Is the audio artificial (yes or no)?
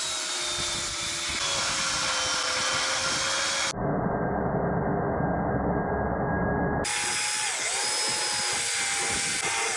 no